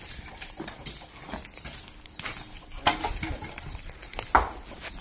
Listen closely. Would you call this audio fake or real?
real